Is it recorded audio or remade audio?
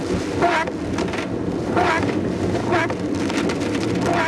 recorded